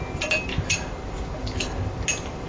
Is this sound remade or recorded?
recorded